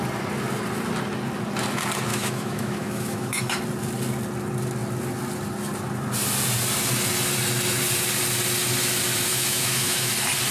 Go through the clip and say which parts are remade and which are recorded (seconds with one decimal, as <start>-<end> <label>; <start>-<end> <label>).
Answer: 0.0-2.1 recorded; 2.1-3.6 remade; 3.6-9.3 recorded; 9.3-10.1 remade; 10.1-10.5 recorded